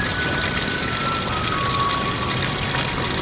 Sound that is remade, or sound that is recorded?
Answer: recorded